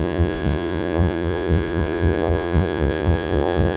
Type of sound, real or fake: fake